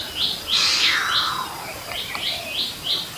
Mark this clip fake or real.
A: real